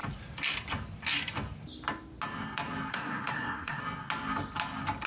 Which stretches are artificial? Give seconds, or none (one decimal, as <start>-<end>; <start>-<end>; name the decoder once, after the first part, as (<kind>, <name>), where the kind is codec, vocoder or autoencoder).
2.9-3.8 (codec, SNAC)